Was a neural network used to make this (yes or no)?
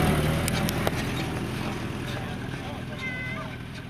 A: no